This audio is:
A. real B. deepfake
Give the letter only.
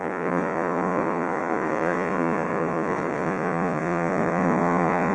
B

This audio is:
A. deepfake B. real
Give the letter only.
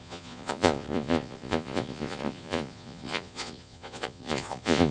A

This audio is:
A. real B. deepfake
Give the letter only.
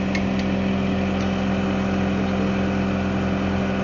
A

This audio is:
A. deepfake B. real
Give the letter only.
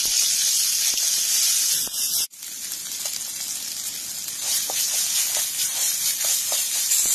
B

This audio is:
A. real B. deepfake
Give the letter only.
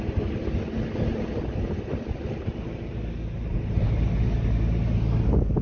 A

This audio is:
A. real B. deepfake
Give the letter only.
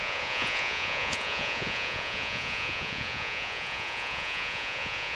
B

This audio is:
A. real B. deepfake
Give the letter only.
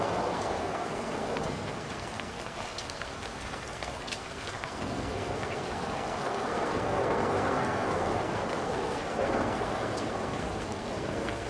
B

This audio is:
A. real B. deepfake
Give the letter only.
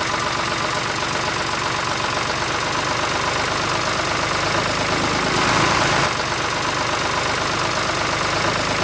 A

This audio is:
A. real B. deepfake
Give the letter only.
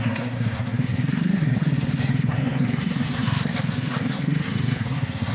B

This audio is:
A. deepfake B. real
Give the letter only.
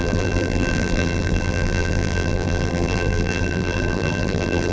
A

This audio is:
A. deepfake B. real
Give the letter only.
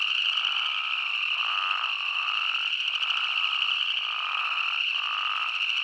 B